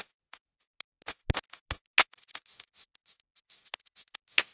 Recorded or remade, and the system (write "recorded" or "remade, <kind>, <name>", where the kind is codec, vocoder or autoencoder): recorded